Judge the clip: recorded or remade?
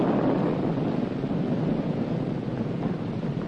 recorded